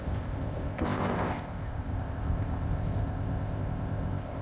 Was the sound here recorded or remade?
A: remade